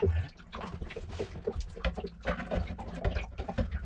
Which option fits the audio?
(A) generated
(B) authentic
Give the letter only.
B